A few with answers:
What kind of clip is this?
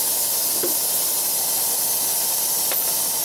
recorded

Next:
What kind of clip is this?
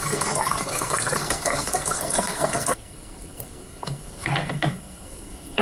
remade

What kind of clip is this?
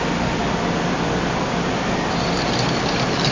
recorded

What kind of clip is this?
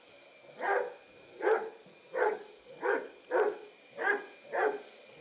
recorded